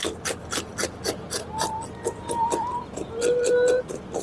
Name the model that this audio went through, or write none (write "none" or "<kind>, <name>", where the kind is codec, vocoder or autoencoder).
none